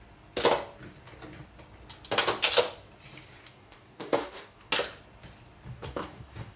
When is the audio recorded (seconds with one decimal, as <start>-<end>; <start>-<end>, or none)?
0.0-3.4; 4.7-5.7